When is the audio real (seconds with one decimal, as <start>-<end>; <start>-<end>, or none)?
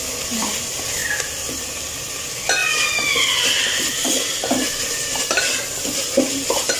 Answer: 0.0-6.8